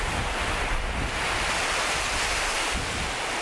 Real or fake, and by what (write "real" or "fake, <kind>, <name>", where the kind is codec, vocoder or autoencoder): real